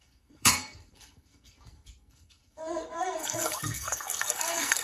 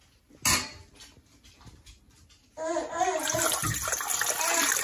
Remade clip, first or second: first